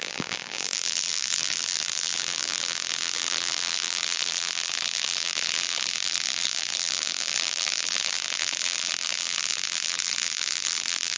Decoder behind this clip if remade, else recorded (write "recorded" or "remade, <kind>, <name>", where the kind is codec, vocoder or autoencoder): remade, vocoder, BigVGAN v2